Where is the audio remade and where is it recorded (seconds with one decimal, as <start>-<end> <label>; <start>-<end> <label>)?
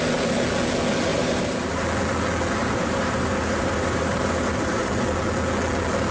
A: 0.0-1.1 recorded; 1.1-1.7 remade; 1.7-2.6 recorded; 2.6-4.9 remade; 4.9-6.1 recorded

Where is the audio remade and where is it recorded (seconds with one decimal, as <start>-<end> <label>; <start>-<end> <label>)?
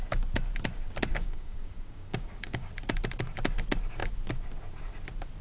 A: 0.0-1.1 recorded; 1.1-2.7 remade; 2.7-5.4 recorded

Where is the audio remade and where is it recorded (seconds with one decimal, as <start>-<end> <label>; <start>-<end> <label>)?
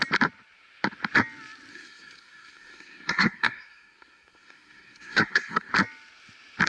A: 0.0-1.7 recorded; 1.7-5.7 remade; 5.7-6.7 recorded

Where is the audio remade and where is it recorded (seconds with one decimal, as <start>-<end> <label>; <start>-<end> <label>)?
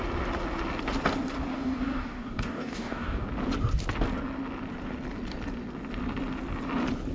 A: 0.0-1.5 recorded; 1.5-3.3 remade; 3.3-7.1 recorded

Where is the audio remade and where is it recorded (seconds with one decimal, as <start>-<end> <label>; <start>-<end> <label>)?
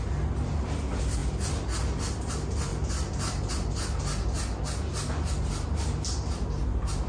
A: 0.0-7.1 recorded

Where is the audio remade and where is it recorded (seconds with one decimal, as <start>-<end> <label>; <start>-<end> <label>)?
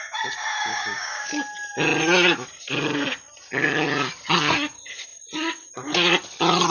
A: 0.0-0.6 recorded; 0.6-1.3 remade; 1.3-6.7 recorded